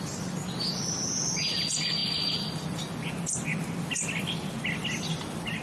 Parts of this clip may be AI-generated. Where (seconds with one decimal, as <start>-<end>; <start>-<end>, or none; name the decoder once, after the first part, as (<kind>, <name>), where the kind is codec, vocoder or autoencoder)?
none